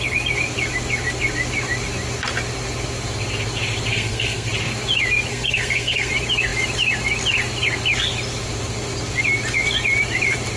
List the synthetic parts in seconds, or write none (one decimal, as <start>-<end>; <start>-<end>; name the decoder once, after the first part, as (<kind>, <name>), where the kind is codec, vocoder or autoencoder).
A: 3.9-4.5 (codec, SNAC); 5.3-6.1